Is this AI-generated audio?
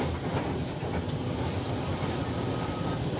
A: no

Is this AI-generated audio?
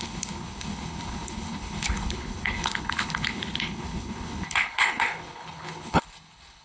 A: yes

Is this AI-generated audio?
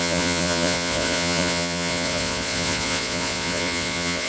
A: yes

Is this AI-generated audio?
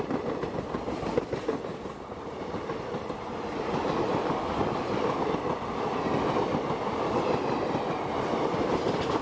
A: no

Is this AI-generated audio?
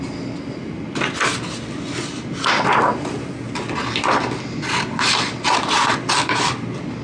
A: no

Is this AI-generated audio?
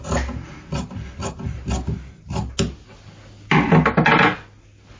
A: no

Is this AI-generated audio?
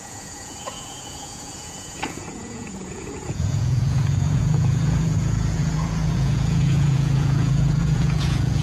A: yes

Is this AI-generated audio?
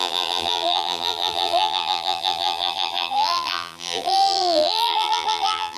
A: yes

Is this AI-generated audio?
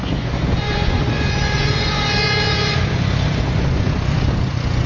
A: yes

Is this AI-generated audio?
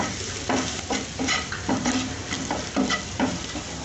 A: yes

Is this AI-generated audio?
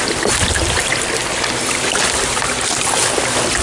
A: no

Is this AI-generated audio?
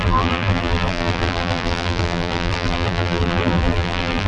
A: yes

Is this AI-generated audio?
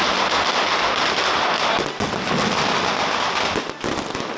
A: no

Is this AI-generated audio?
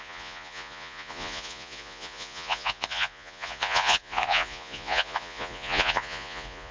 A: yes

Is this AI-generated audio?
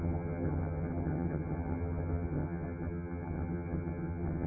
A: yes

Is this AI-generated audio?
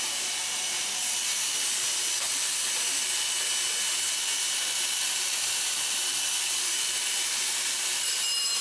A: no